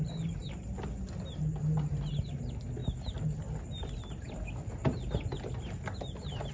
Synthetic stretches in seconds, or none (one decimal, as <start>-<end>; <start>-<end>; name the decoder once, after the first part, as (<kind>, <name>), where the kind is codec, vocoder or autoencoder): none